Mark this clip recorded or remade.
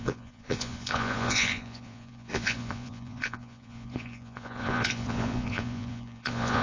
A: remade